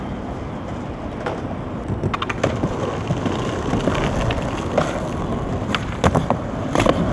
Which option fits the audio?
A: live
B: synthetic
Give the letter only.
A